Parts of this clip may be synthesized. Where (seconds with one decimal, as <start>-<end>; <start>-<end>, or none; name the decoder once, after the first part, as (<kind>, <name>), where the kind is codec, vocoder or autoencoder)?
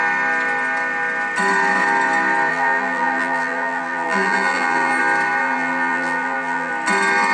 2.5-5.0 (vocoder, BigVGAN v2); 5.4-6.7